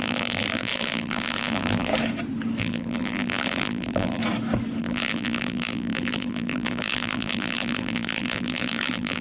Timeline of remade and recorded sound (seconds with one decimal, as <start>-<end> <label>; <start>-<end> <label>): 0.0-1.9 remade; 1.9-2.6 recorded; 2.6-4.2 remade; 4.2-4.8 recorded; 4.8-9.2 remade